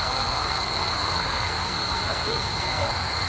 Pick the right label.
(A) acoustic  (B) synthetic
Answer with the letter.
B